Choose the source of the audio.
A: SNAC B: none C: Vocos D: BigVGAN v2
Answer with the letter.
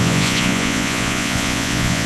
C